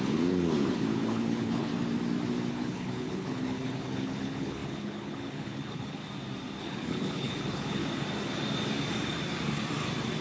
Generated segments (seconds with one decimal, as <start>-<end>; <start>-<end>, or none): 0.0-1.7; 2.5-6.0; 6.6-7.8